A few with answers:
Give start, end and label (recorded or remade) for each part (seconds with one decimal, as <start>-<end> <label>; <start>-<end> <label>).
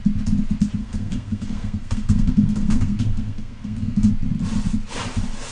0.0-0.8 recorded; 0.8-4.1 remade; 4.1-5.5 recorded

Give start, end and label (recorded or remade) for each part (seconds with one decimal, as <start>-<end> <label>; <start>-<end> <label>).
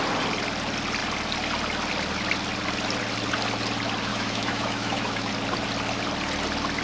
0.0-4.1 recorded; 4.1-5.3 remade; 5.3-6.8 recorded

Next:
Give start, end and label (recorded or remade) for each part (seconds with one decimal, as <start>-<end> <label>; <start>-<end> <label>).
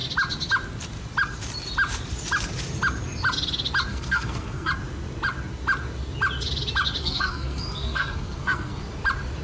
0.0-3.9 recorded; 3.9-4.7 remade; 4.7-7.0 recorded; 7.0-8.8 remade; 8.8-9.4 recorded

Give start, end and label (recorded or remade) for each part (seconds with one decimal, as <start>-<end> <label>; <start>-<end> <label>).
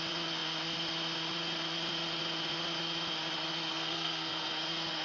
0.0-3.7 recorded; 3.7-4.5 remade; 4.5-5.0 recorded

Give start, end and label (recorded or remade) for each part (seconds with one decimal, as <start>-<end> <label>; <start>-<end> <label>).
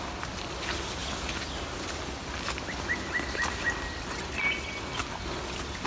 0.0-5.9 recorded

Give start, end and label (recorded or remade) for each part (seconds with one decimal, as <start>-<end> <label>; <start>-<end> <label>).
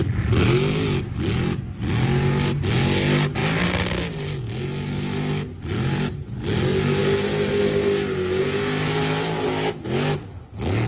0.0-10.9 recorded